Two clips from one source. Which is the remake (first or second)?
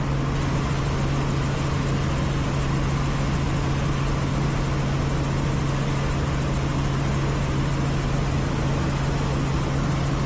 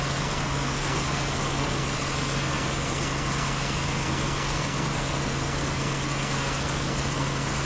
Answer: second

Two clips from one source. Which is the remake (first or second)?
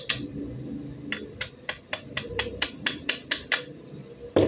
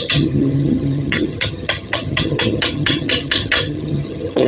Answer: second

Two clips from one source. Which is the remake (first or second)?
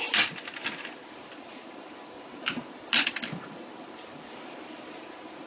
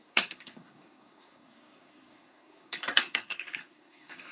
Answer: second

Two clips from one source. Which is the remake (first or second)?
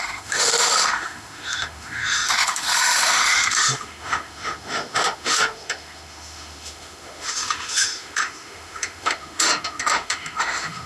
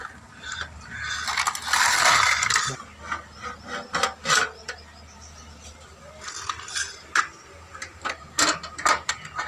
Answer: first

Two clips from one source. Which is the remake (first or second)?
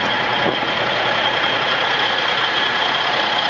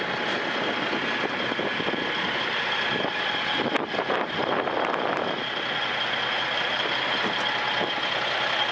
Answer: first